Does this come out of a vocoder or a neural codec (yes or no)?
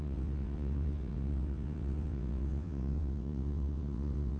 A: yes